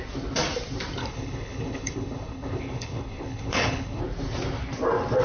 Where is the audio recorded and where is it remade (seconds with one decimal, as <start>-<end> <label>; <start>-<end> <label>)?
0.0-1.0 recorded; 1.0-4.0 remade; 4.0-5.2 recorded